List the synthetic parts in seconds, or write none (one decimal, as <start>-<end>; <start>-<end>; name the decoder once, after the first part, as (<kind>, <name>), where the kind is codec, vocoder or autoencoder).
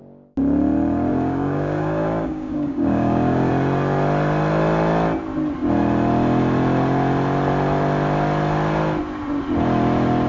1.1-3.5 (codec, DAC)